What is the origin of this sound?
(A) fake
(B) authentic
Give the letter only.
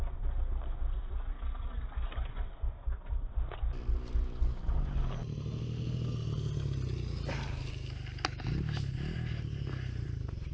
B